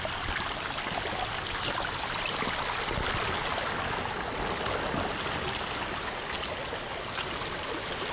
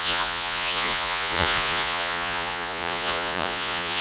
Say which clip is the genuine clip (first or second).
first